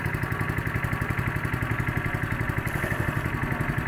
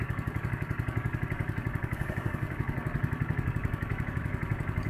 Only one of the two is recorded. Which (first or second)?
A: first